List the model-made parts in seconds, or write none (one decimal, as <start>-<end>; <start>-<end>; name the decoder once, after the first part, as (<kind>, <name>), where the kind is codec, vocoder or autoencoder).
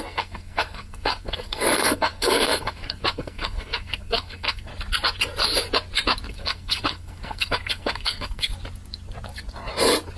0.0-4.7 (codec, SNAC); 6.3-8.5